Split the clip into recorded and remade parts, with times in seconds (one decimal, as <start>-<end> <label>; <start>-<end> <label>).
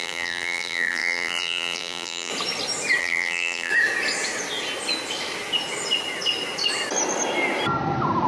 0.0-2.3 remade; 2.3-3.0 recorded; 3.0-3.7 remade; 3.7-8.3 recorded